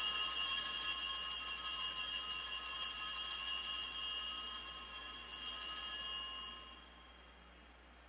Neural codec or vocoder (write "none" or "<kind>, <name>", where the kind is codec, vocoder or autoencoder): none